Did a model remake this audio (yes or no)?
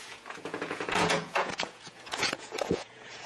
yes